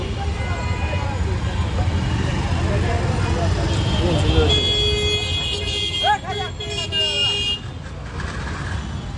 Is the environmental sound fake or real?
real